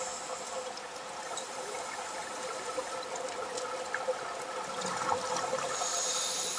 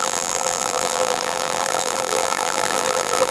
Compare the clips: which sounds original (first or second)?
first